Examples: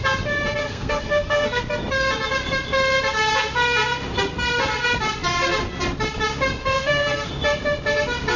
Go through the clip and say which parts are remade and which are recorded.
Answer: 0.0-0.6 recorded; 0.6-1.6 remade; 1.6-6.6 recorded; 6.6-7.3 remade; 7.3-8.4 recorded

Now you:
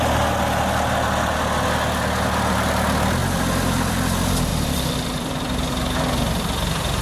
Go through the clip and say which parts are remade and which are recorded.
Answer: 0.0-3.2 recorded; 3.2-3.9 remade; 3.9-4.5 recorded; 4.5-5.3 remade; 5.3-7.0 recorded

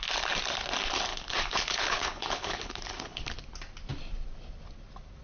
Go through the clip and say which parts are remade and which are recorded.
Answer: 0.0-1.1 recorded; 1.1-3.3 remade; 3.3-5.2 recorded